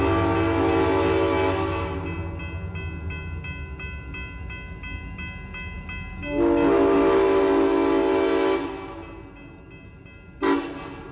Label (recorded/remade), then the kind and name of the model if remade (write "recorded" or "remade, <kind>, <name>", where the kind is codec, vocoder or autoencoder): recorded